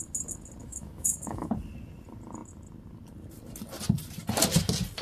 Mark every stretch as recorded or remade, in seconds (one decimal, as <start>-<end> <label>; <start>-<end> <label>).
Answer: 0.0-0.6 recorded; 0.6-1.5 remade; 1.5-5.0 recorded